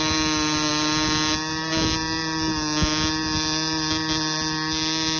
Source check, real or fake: real